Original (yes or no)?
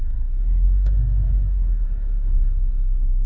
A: no